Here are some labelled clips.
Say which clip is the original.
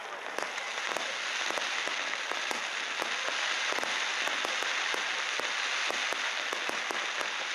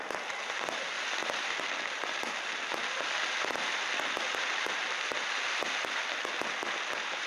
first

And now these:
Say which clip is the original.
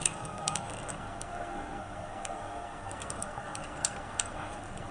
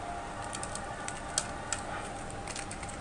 second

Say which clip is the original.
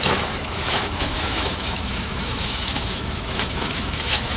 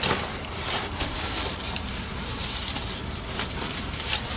second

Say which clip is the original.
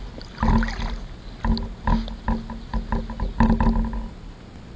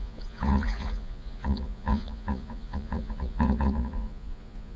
first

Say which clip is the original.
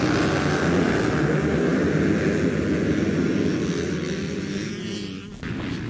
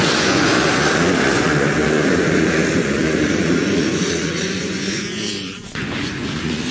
first